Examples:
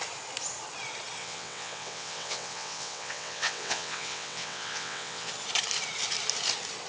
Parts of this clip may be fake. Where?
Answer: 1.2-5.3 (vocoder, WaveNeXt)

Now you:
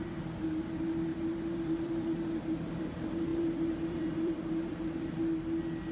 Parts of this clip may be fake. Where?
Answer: 1.1-2.7 (vocoder, BigVGAN v2); 3.3-5.2

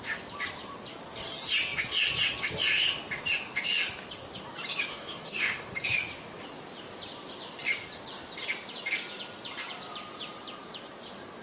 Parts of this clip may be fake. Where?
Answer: 4.9-5.7 (codec, DAC)

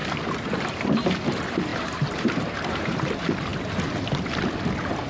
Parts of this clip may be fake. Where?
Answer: 1.7-3.0 (vocoder, BigVGAN v2)